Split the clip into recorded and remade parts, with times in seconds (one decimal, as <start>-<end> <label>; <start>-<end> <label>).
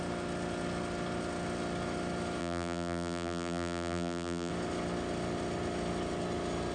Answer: 0.0-2.4 recorded; 2.4-4.5 remade; 4.5-6.7 recorded